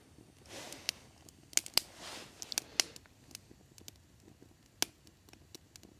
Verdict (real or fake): real